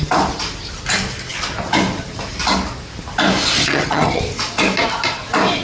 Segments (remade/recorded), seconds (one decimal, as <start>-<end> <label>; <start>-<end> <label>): 0.0-3.6 recorded; 3.6-4.2 remade; 4.2-5.6 recorded